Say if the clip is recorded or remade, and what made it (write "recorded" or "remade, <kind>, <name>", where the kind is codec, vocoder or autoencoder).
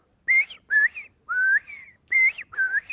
recorded